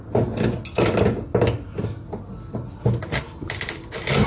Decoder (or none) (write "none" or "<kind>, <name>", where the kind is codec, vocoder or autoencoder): none